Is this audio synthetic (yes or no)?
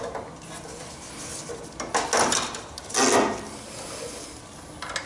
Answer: no